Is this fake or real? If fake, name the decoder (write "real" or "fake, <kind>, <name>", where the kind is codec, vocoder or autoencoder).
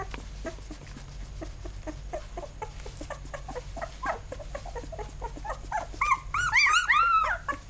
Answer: real